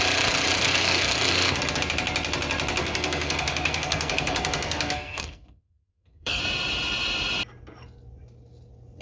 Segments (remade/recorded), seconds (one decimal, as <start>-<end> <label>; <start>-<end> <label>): 0.0-0.6 recorded; 0.6-1.6 remade; 1.6-2.8 recorded; 2.8-6.4 remade; 6.4-9.0 recorded